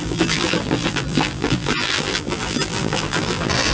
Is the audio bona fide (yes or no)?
no